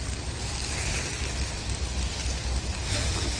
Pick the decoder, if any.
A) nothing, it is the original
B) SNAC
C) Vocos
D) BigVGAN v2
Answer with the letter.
A